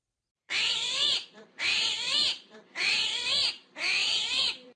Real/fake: fake